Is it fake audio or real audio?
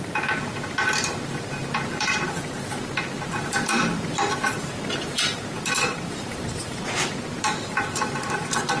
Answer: fake